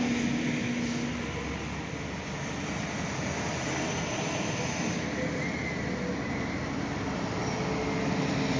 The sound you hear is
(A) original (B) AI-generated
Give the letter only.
A